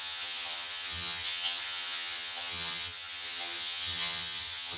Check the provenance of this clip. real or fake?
fake